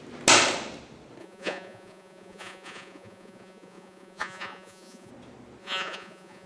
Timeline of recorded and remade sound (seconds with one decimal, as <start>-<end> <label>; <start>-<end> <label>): 0.0-1.2 recorded; 1.2-5.1 remade; 5.1-5.6 recorded; 5.6-6.5 remade